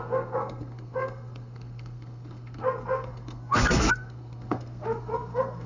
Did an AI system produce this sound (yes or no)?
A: yes